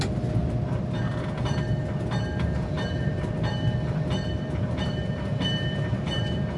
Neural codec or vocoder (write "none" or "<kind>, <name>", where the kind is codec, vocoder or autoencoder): vocoder, BigVGAN v2